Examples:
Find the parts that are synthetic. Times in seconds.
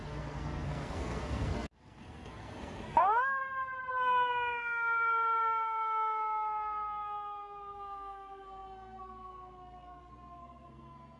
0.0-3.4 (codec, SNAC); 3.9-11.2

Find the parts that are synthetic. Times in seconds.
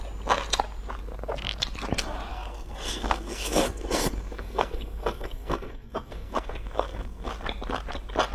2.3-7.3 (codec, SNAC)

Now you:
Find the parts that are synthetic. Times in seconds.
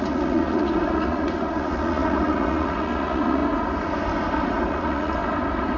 0.0-3.4 (vocoder, Vocos); 4.7-5.2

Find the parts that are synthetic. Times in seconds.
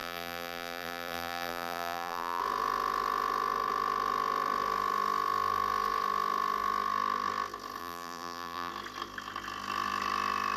0.0-2.4 (vocoder, BigVGAN v2); 7.8-8.7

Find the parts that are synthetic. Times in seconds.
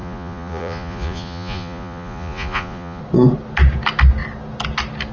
0.0-3.0 (vocoder, Vocos)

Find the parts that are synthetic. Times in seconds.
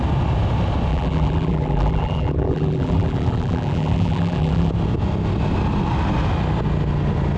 0.9-4.7 (vocoder, BigVGAN v2)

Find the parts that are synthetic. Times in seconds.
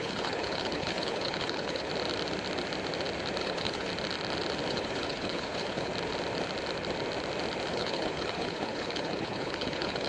0.0-1.9 (codec, HILCodec); 3.4-3.9; 4.7-5.9; 7.7-10.1